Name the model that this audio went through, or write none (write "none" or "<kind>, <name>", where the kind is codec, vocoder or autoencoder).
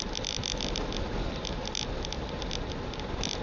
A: none